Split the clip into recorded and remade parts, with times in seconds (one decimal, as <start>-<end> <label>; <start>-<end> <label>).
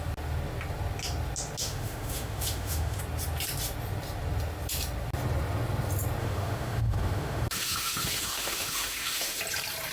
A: 0.0-1.6 recorded; 1.6-3.0 remade; 3.0-6.2 recorded; 6.2-9.4 remade; 9.4-9.9 recorded